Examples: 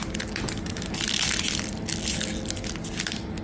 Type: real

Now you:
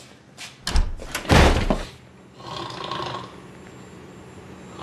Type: real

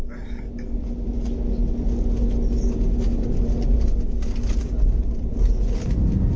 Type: real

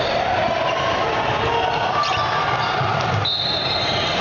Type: real